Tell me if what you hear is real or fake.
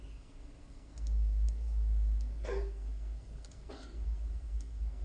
fake